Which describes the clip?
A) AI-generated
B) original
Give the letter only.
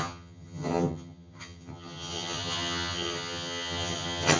A